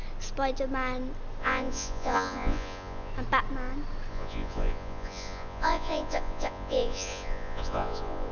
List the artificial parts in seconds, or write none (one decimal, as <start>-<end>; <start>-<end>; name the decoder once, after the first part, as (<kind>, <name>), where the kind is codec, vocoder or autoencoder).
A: 1.4-3.1 (vocoder, Vocos); 4.1-8.3